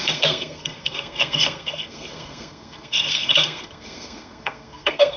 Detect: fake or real fake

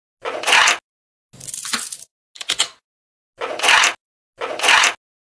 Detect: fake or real real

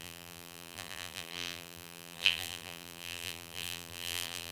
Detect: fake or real fake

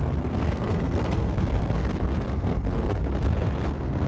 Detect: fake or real fake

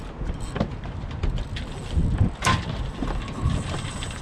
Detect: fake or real real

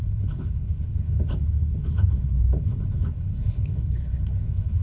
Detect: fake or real fake